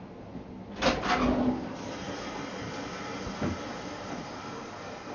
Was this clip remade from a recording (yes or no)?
no